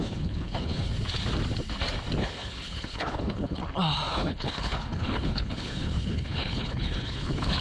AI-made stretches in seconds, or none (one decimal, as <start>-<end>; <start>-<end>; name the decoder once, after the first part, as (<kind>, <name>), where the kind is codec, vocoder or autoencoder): 0.0-0.9 (codec, HILCodec); 2.2-3.6; 4.1-7.6